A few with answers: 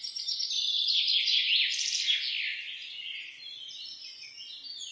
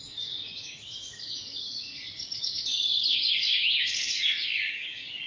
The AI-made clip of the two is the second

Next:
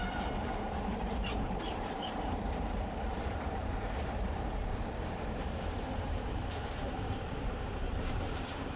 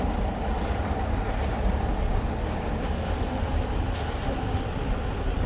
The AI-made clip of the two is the first